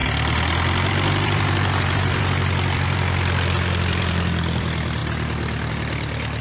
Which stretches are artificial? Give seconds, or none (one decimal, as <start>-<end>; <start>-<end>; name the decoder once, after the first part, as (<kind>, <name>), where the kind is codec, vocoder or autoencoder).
0.9-6.4 (vocoder, BigVGAN v2)